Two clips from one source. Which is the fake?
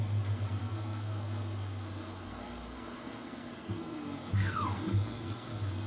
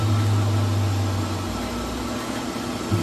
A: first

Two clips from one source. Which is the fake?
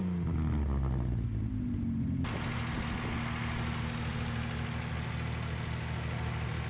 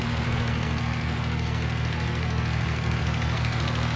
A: second